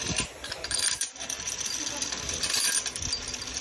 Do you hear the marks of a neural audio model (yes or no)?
yes